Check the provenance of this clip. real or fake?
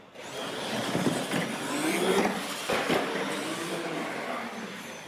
real